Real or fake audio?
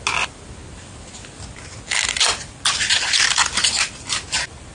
real